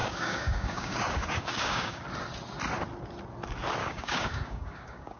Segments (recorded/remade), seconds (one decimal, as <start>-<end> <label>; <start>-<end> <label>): 0.0-2.0 remade; 2.0-3.8 recorded; 3.8-5.2 remade